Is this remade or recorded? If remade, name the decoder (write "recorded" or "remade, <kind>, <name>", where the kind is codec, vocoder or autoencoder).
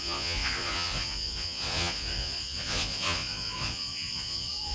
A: remade, vocoder, Vocos